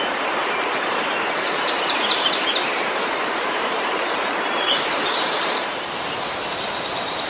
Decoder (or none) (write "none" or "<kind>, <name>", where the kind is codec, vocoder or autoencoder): vocoder, BigVGAN v2